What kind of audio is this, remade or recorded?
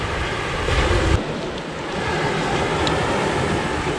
recorded